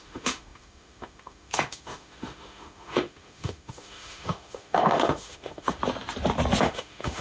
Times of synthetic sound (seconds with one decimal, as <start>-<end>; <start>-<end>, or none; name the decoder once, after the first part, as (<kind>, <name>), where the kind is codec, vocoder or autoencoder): 0.0-5.8 (autoencoder, DAC-VAE); 6.6-7.2